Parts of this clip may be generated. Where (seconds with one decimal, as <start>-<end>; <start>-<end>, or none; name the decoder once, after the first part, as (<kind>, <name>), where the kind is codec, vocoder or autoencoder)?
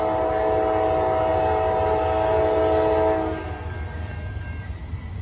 none